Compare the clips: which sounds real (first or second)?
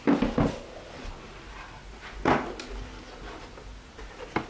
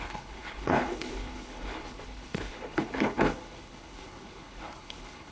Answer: first